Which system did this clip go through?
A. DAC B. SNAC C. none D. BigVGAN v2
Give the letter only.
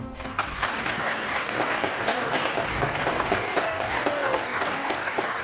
A